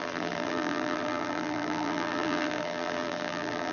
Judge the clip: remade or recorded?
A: remade